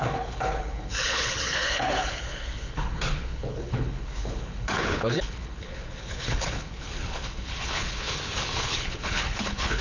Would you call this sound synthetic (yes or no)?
yes